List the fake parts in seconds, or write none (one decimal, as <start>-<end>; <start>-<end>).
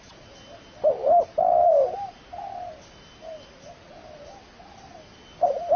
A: 1.0-2.1